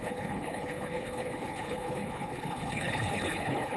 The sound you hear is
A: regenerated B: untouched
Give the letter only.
A